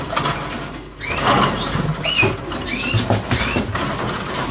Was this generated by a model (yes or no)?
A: no